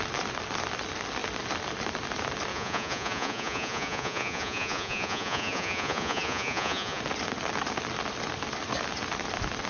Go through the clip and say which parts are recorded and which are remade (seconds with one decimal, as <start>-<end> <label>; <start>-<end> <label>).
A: 0.0-2.5 recorded; 2.5-7.0 remade; 7.0-9.7 recorded